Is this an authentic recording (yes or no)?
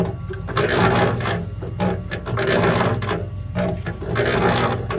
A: yes